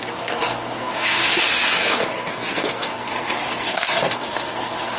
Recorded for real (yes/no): no